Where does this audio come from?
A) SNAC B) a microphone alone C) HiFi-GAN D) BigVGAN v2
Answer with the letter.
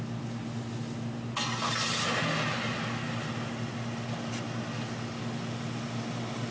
B